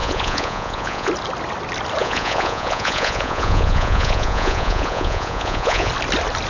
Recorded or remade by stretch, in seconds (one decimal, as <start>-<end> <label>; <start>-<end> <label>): 0.0-1.1 remade; 1.1-2.0 recorded; 2.0-5.9 remade; 5.9-6.5 recorded